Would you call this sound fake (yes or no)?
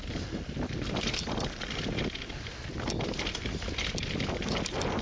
no